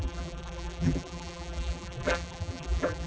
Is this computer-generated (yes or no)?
yes